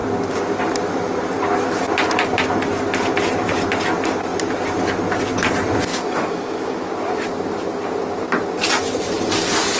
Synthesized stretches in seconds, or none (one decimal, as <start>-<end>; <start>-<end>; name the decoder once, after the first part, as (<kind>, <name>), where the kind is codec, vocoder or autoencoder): 5.9-6.9 (autoencoder, DAC-VAE)